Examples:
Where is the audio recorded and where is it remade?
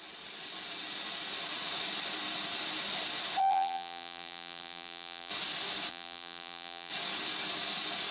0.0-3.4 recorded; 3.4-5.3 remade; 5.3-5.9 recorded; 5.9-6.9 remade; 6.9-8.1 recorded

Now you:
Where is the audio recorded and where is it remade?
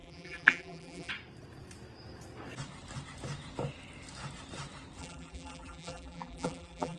0.0-1.1 remade; 1.1-5.0 recorded; 5.0-7.0 remade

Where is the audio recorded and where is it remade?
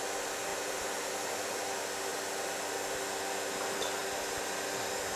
0.0-0.5 recorded; 0.5-1.7 remade; 1.7-5.2 recorded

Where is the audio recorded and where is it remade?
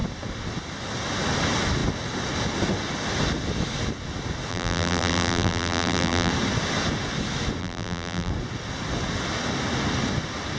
0.0-4.5 recorded; 4.5-6.3 remade; 6.3-7.6 recorded; 7.6-8.3 remade; 8.3-10.6 recorded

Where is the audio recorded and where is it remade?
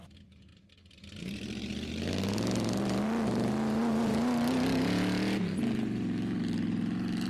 0.0-7.3 recorded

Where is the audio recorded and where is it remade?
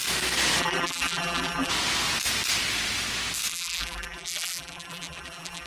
0.0-0.6 recorded; 0.6-1.7 remade; 1.7-3.5 recorded; 3.5-5.7 remade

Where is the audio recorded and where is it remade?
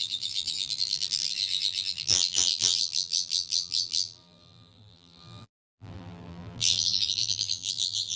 0.0-8.2 remade